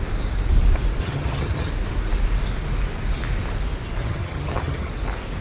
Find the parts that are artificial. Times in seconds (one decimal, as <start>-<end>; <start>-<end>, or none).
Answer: 1.0-1.7; 4.0-4.9

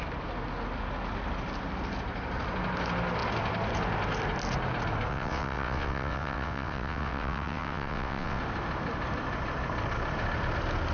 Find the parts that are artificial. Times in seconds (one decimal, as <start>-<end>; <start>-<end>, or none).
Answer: 5.1-8.4

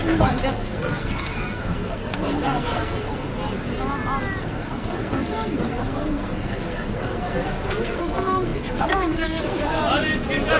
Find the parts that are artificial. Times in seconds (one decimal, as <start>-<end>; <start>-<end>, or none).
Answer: 0.0-3.3; 4.4-9.8

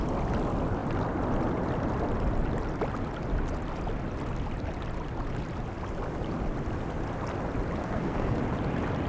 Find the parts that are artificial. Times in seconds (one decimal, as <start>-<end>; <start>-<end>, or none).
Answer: 7.8-8.4

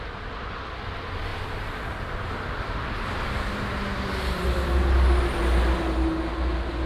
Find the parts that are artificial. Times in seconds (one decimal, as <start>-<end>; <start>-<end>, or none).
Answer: none

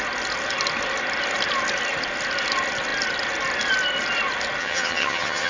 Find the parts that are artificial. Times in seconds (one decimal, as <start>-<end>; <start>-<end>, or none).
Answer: 4.6-5.5